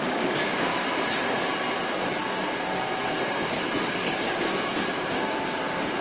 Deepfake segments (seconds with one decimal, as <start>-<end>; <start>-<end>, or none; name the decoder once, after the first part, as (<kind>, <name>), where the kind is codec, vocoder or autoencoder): 0.0-0.7 (codec, DAC); 3.9-4.7; 5.4-6.0